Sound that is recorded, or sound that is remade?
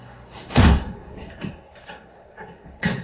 remade